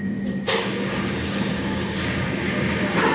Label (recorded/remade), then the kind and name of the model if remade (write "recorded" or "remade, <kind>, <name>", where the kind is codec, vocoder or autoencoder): remade, codec, DAC